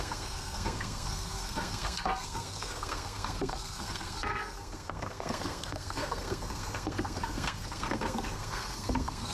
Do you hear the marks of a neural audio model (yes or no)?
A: yes